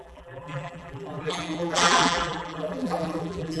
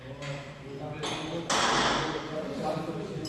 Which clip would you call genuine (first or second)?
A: second